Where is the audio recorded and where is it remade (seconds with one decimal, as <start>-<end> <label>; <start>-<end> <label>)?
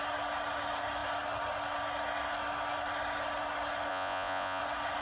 0.0-3.9 recorded; 3.9-4.6 remade; 4.6-5.0 recorded